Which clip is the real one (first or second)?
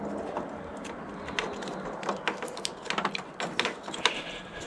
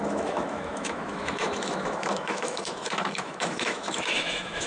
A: first